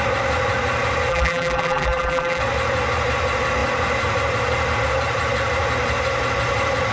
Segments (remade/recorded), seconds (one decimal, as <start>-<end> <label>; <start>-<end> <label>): 0.0-1.1 recorded; 1.1-2.4 remade; 2.4-6.9 recorded